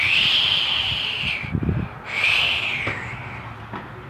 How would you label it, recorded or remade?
recorded